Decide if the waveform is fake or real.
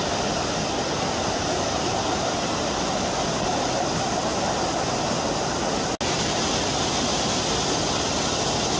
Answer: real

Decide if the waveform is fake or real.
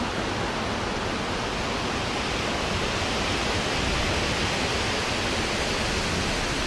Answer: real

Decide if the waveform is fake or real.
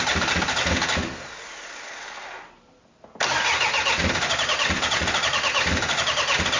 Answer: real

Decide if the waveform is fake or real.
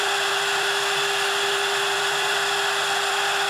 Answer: real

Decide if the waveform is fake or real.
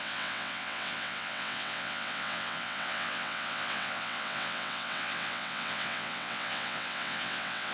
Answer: fake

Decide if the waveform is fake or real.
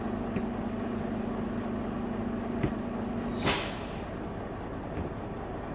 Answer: real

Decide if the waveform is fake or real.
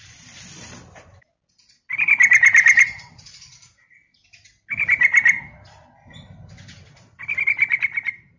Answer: real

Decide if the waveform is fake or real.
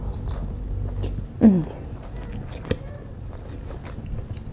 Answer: real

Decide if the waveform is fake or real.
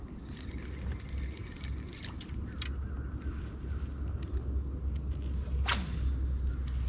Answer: real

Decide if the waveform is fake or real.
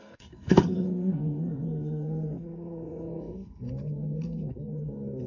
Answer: fake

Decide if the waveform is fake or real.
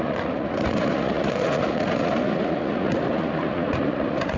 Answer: fake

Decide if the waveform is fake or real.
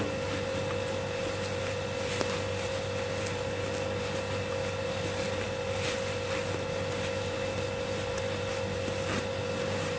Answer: real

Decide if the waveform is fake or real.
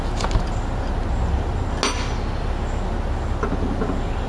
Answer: real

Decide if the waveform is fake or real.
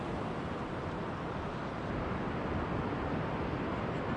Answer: real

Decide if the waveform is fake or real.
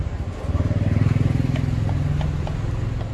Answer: real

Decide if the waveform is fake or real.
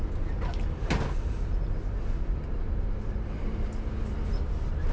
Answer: real